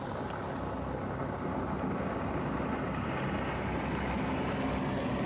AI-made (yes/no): no